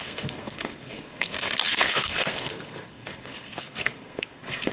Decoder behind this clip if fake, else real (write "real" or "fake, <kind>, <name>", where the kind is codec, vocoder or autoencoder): fake, codec, SNAC